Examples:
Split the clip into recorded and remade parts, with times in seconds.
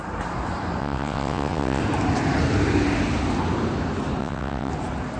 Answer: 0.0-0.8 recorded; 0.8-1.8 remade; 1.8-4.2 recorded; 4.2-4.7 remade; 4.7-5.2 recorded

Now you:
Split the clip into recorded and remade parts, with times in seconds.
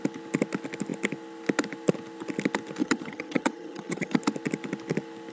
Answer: 0.0-2.8 recorded; 2.8-4.2 remade; 4.2-5.3 recorded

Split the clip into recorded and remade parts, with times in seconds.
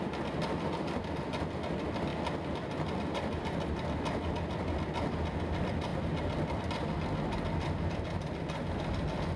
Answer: 0.0-9.4 recorded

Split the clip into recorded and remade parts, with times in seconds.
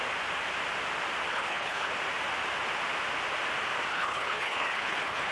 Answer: 0.0-1.3 recorded; 1.3-1.9 remade; 1.9-3.9 recorded; 3.9-5.3 remade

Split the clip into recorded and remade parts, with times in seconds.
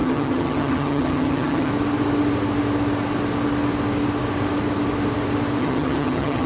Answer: 0.0-1.7 remade; 1.7-5.6 recorded; 5.6-6.5 remade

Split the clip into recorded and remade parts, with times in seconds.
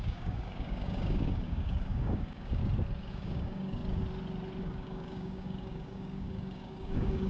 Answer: 0.0-2.6 remade; 2.6-3.1 recorded; 3.1-3.8 remade; 3.8-4.6 recorded; 4.6-7.3 remade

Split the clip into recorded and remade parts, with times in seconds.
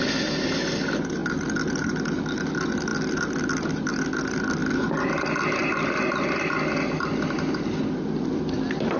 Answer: 0.0-9.0 recorded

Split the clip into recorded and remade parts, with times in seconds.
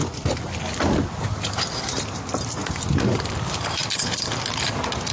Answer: 0.0-5.1 recorded